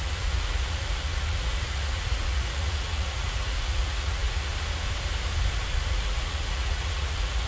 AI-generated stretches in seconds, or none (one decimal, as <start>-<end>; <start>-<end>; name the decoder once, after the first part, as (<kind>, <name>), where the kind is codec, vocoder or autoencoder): 0.0-4.5 (vocoder, Vocos); 5.7-7.5